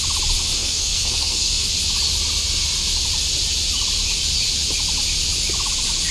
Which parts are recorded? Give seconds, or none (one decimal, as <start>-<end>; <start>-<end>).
0.0-0.6; 1.7-6.1